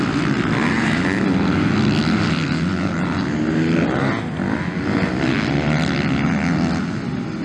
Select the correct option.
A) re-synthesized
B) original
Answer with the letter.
B